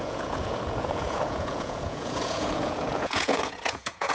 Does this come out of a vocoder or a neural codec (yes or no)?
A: yes